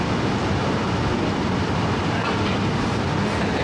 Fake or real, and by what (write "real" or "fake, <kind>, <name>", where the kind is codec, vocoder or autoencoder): real